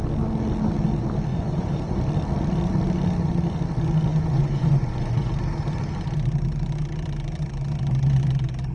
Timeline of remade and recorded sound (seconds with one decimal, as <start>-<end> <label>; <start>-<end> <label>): 0.0-1.3 recorded; 1.3-2.0 remade; 2.0-4.1 recorded; 4.1-5.3 remade; 5.3-8.7 recorded